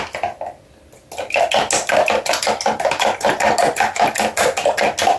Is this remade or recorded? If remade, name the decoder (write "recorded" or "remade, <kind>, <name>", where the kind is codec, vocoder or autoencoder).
recorded